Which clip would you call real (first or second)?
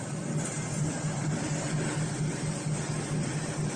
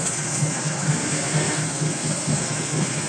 first